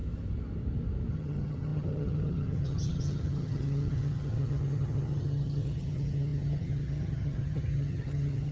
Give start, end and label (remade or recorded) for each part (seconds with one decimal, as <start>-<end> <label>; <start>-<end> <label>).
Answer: 0.0-1.1 recorded; 1.1-8.5 remade